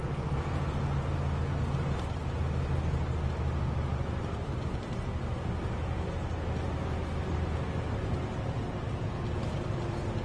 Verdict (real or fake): real